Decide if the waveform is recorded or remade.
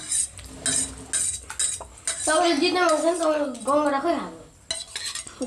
recorded